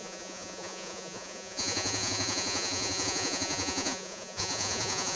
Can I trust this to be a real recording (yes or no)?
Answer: no